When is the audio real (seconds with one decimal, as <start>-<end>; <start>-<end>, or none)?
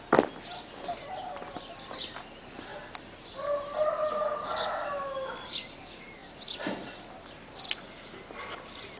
0.0-9.0